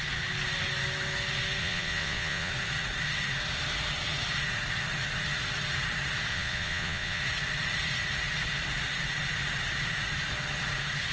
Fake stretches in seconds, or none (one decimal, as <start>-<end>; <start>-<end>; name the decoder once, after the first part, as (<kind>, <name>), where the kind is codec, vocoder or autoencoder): 1.6-2.5 (vocoder, Vocos); 6.3-7.2